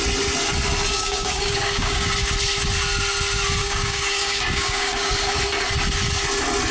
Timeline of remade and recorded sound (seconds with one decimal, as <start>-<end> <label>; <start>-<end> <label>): 0.0-0.9 recorded; 0.9-2.1 remade; 2.1-3.6 recorded; 3.6-5.1 remade; 5.1-6.7 recorded